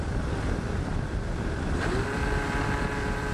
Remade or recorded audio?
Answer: remade